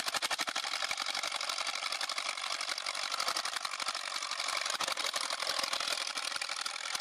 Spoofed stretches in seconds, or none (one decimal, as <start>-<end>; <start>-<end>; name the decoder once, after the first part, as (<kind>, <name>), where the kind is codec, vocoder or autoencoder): none